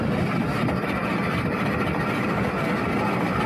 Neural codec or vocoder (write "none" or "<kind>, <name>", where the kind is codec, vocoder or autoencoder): none